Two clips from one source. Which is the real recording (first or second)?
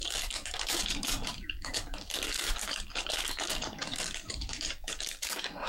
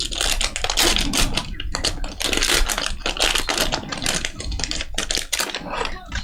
second